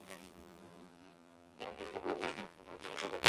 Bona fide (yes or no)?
no